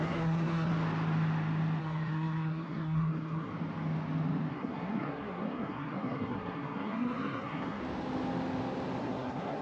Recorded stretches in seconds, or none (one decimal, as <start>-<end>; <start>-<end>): 0.7-1.8; 3.5-4.5; 7.8-9.0